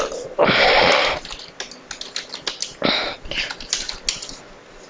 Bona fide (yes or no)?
yes